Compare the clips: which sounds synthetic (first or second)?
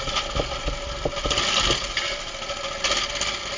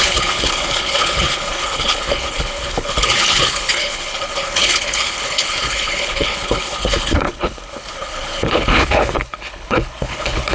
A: second